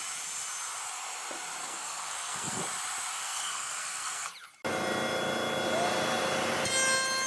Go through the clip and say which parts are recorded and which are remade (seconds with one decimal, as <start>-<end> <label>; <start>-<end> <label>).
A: 0.0-1.6 recorded; 1.6-2.6 remade; 2.6-3.1 recorded; 3.1-4.3 remade; 4.3-7.3 recorded